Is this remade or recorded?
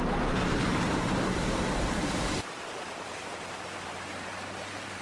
remade